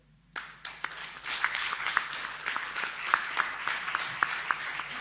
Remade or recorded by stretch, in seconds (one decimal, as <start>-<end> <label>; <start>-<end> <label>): 0.0-1.0 recorded; 1.0-1.9 remade; 1.9-2.4 recorded; 2.4-3.3 remade; 3.3-5.0 recorded